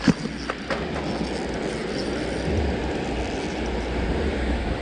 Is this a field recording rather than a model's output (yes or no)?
yes